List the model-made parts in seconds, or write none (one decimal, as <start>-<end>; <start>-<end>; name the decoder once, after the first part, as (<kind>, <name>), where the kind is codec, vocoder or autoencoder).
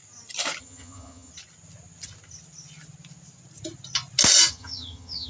0.6-1.3 (vocoder, HiFi-GAN); 4.5-5.3